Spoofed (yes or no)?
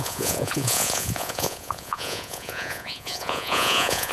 yes